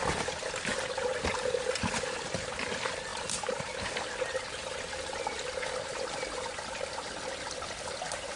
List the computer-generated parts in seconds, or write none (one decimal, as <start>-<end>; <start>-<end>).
none